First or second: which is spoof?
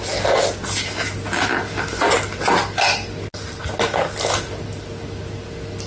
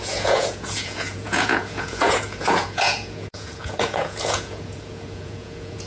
second